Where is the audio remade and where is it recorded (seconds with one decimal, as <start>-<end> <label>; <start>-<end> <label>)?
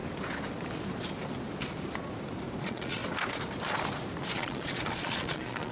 0.0-2.6 recorded; 2.6-3.0 remade; 3.0-4.3 recorded; 4.3-5.7 remade